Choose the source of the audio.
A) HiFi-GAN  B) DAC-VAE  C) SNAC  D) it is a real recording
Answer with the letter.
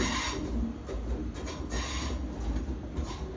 D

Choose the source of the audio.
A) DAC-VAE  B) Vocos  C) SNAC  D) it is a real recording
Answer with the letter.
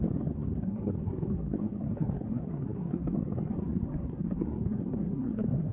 C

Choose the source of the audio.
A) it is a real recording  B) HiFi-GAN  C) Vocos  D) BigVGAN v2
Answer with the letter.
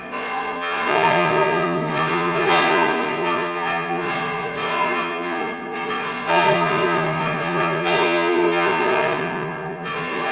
C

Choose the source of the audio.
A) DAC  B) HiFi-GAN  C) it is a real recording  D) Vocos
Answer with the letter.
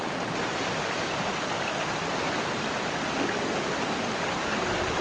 C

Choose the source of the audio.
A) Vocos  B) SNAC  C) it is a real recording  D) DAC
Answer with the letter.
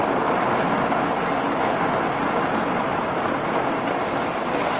C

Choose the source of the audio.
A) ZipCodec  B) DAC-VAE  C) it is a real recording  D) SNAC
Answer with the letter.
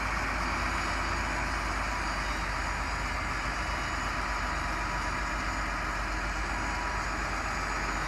C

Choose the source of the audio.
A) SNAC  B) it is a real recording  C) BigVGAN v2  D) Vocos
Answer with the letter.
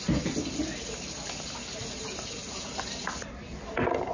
B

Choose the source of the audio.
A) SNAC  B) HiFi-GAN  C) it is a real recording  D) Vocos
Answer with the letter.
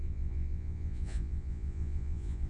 D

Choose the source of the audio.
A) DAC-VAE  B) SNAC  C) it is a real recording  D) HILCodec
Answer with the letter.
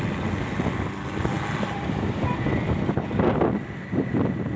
C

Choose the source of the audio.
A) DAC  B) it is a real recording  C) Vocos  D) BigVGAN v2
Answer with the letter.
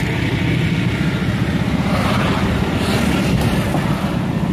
B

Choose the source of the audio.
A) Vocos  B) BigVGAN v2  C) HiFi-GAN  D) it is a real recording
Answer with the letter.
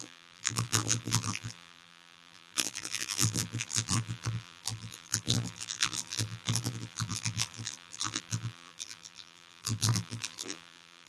B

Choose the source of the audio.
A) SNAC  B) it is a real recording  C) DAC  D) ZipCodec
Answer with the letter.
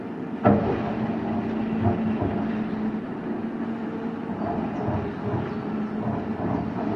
B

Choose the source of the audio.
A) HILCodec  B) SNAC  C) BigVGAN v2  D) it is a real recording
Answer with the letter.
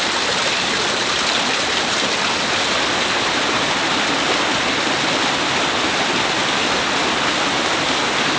D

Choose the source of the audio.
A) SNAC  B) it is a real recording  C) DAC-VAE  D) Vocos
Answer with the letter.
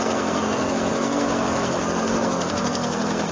A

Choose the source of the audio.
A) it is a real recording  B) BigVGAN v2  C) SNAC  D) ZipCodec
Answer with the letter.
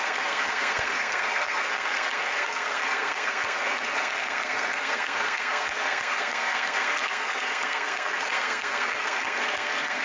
C